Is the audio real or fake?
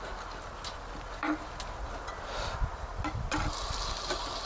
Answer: real